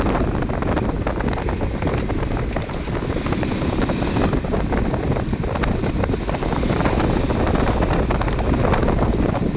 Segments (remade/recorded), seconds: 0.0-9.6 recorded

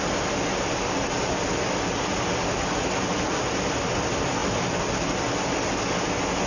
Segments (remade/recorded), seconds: 0.0-6.5 recorded

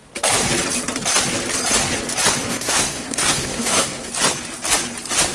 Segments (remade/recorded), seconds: 0.0-2.5 recorded; 2.5-4.1 remade; 4.1-5.3 recorded